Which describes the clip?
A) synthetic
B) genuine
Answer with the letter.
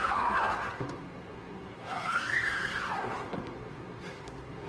A